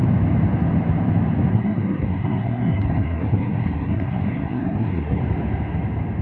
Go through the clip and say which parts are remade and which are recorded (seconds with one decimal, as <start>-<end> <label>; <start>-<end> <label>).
0.0-1.5 recorded; 1.5-5.2 remade; 5.2-6.2 recorded